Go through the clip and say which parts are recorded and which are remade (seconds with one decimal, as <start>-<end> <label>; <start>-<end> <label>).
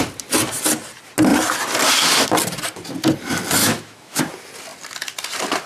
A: 0.0-3.6 recorded; 3.6-4.2 remade; 4.2-5.7 recorded